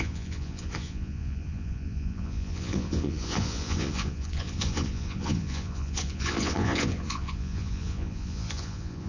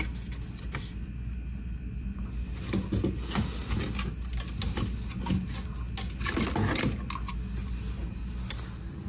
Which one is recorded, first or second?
second